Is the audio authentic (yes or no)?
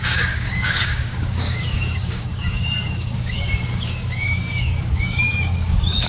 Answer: no